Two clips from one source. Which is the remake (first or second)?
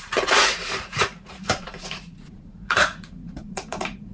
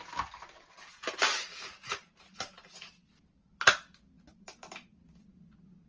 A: first